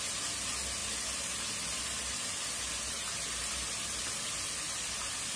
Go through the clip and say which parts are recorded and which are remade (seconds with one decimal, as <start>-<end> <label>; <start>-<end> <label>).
0.0-5.4 recorded